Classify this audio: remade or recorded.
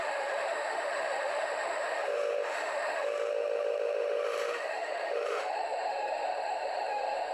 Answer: remade